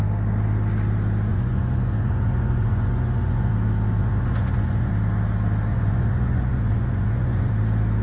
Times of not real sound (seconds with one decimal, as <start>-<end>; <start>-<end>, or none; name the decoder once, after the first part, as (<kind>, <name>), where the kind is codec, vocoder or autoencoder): 1.3-3.5 (vocoder, Vocos); 4.0-4.9; 5.7-7.5